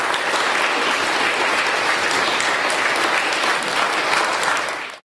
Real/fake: real